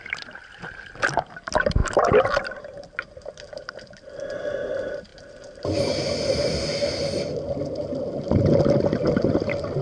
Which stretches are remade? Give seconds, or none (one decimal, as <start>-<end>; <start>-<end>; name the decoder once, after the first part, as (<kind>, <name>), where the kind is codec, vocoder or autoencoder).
none